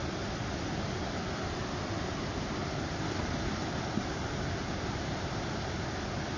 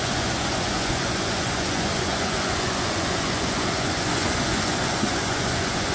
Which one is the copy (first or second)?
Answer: second